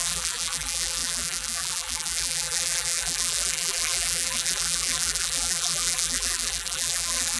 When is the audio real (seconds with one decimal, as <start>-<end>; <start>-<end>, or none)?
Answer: none